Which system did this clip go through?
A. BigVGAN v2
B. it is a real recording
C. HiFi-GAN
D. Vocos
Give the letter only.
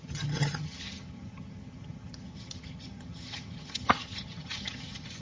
C